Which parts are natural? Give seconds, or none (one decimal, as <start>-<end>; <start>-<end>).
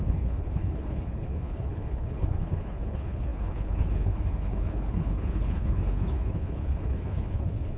none